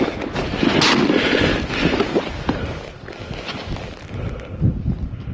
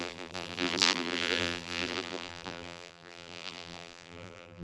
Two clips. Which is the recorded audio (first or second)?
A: first